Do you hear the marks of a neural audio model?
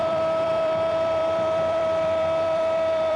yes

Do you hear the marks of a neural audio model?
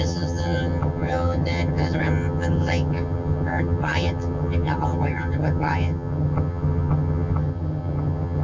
yes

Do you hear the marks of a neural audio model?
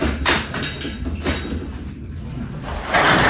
no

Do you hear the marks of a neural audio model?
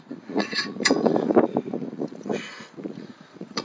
yes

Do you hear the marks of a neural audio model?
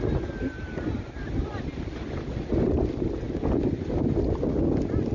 no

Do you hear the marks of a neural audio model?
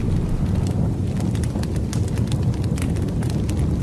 no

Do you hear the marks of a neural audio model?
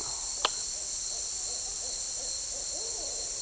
no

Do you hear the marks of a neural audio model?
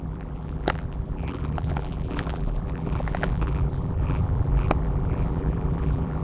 yes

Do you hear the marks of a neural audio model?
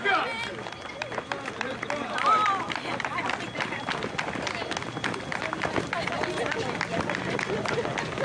no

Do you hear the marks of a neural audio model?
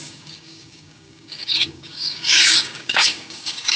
yes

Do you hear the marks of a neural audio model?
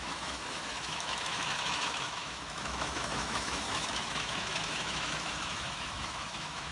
yes